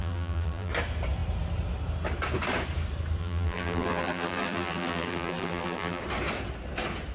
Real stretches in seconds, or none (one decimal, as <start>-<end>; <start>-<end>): 0.7-3.2; 6.0-7.1